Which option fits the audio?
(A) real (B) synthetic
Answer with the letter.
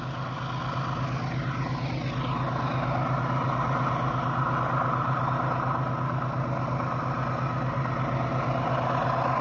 A